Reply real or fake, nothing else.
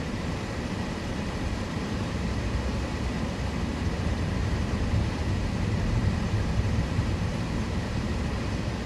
fake